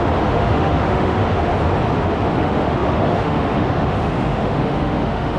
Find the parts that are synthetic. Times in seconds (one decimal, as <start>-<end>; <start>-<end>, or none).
0.0-1.5; 2.4-5.4